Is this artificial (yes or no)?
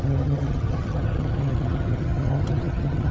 yes